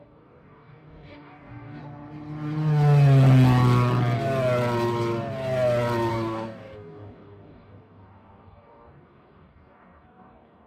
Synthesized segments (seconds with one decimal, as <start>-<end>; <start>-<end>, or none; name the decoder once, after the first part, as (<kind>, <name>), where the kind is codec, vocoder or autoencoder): 0.0-1.8 (codec, DAC); 6.1-10.7